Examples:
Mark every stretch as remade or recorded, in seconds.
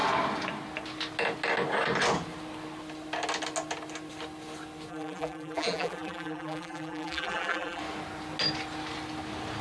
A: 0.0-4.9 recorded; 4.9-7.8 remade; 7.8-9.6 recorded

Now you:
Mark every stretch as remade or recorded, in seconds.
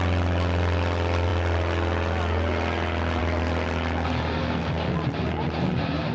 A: 0.0-4.4 recorded; 4.4-4.9 remade; 4.9-6.1 recorded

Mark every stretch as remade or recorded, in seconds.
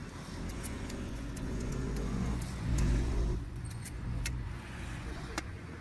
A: 0.0-0.5 recorded; 0.5-5.8 remade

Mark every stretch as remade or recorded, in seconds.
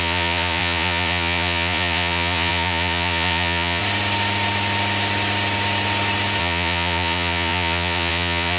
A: 0.0-3.8 remade; 3.8-6.4 recorded; 6.4-8.6 remade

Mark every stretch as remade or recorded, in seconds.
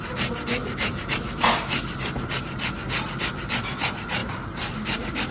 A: 0.0-0.6 recorded; 0.6-2.3 remade; 2.3-4.2 recorded; 4.2-5.3 remade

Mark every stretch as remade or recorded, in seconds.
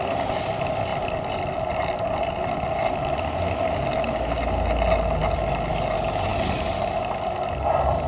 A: 0.0-8.1 recorded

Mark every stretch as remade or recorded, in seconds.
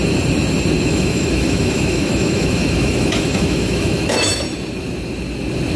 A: 0.0-0.9 recorded; 0.9-4.4 remade; 4.4-5.8 recorded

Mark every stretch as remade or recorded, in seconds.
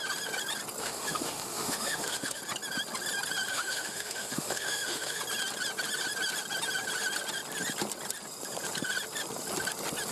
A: 0.0-0.8 recorded; 0.8-2.4 remade; 2.4-3.5 recorded; 3.5-5.2 remade; 5.2-10.1 recorded